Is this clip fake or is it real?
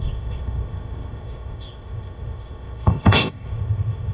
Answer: fake